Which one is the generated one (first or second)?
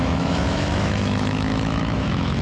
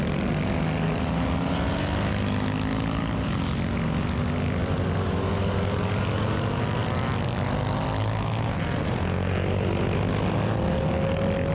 first